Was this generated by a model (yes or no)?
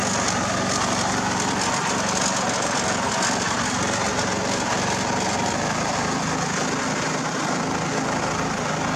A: no